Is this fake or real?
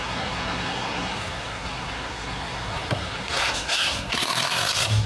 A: fake